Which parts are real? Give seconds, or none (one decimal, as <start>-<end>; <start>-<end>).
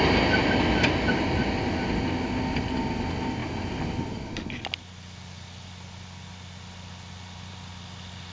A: 0.0-8.3